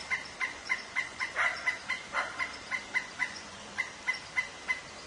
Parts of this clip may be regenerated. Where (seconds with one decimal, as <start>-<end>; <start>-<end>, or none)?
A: 0.6-1.8; 3.2-3.8